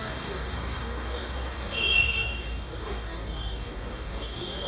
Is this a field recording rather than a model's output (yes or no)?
no